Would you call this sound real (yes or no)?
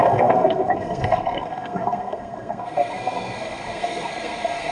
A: no